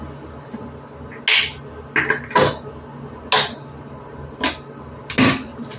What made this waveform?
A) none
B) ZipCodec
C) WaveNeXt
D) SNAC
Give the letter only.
A